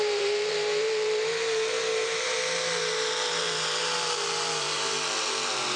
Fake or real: fake